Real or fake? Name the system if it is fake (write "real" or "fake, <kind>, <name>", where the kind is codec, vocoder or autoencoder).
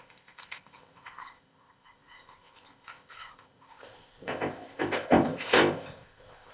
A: fake, codec, ZipCodec